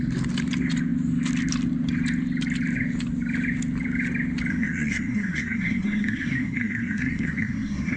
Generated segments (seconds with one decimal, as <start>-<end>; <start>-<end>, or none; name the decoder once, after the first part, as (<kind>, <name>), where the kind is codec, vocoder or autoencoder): 4.5-8.0 (codec, SNAC)